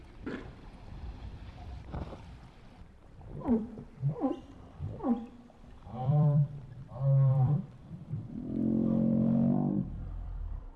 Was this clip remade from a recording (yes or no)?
yes